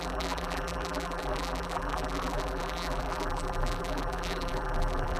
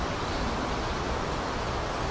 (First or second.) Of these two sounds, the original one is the second